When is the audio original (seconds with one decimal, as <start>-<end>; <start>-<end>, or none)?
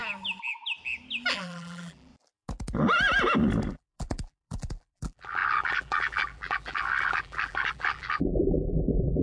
0.0-1.3; 2.1-3.7